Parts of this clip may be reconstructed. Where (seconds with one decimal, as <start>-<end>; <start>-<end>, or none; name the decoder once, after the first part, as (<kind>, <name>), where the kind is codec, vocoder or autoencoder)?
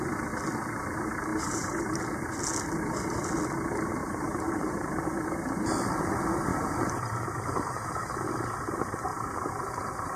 1.3-2.0 (vocoder, BigVGAN v2); 4.0-4.9; 6.5-8.1; 9.1-9.6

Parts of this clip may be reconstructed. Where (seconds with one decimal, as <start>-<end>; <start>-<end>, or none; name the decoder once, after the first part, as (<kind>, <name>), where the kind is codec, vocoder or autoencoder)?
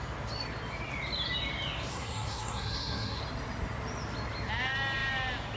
1.9-3.2 (codec, SNAC)